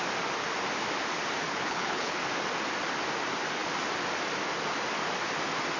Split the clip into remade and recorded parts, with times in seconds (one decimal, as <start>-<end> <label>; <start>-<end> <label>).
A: 0.0-1.5 recorded; 1.5-2.2 remade; 2.2-5.8 recorded